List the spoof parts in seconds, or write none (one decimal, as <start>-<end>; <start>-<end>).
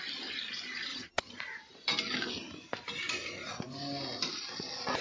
0.9-1.4